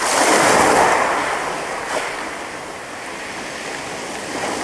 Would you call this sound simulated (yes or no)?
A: no